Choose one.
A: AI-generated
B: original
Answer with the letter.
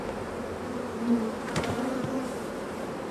A